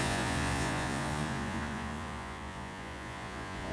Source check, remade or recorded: remade